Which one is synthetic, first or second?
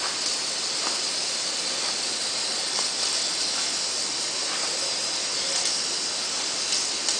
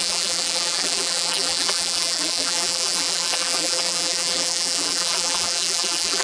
second